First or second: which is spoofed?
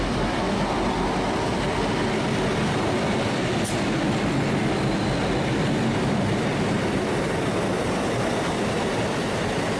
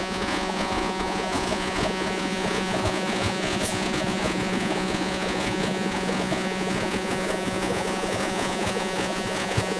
second